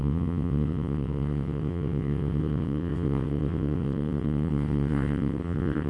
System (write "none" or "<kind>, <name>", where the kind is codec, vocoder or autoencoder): vocoder, WaveNeXt